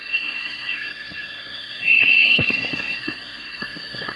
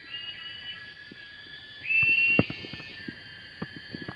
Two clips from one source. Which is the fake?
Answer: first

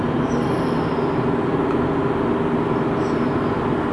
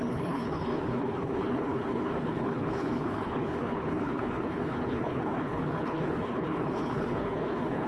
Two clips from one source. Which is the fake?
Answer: second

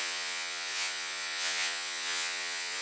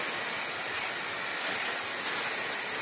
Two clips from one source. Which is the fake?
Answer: first